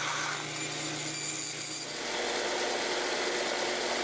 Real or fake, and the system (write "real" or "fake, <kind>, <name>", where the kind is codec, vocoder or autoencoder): real